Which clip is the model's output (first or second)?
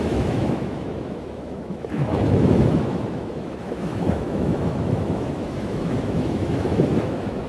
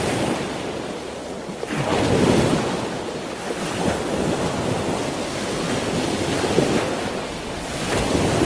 first